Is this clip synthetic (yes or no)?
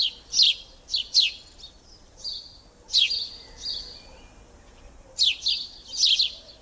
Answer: no